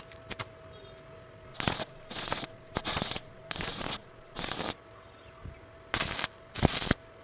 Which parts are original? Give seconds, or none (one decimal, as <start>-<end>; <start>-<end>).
0.0-1.5; 4.6-7.2